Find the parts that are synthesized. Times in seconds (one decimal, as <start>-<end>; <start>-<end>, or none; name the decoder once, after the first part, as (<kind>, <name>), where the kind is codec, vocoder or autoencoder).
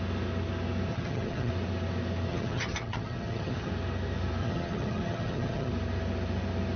0.9-1.5 (vocoder, HiFi-GAN); 2.3-3.7; 4.4-5.7